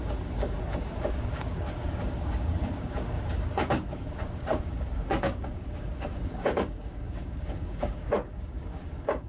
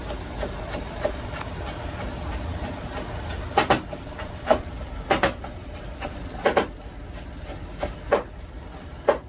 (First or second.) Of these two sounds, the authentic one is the second